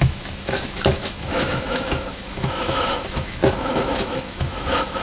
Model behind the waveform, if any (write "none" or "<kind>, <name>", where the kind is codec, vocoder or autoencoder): autoencoder, DAC-VAE